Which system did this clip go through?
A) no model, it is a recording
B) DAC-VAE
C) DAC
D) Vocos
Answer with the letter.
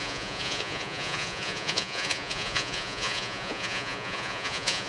D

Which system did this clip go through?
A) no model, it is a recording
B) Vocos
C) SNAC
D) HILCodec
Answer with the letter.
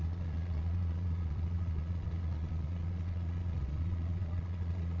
B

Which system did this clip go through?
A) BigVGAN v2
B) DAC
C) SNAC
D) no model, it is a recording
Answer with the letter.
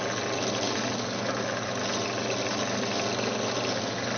D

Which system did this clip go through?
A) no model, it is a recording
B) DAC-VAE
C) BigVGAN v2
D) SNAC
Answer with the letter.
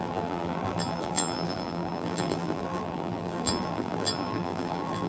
C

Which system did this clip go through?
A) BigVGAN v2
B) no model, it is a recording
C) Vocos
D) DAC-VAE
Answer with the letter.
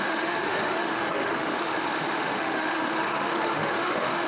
D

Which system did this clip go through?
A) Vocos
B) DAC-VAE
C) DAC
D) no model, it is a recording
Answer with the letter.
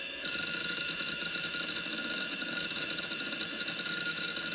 B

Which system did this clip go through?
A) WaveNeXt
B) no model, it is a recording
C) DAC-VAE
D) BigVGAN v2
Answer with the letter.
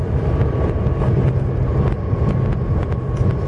B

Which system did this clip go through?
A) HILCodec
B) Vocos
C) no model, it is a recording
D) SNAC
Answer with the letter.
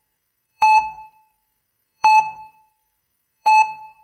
D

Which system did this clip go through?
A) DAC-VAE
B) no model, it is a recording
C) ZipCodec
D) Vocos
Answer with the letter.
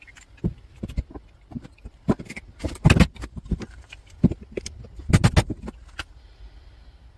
B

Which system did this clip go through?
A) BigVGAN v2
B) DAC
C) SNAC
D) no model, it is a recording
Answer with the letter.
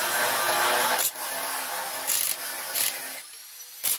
D